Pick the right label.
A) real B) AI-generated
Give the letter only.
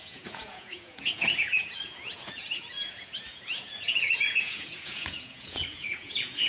B